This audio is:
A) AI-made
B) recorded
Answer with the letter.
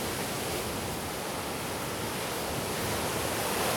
B